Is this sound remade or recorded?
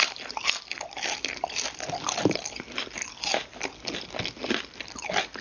remade